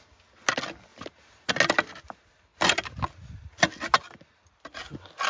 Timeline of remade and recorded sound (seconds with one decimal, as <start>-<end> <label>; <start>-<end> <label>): 0.0-0.9 recorded; 0.9-1.5 remade; 1.5-5.3 recorded